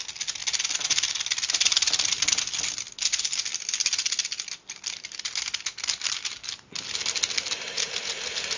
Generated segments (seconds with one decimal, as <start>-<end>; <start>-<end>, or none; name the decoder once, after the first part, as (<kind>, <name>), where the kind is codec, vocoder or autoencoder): 3.5-5.2 (vocoder, BigVGAN v2)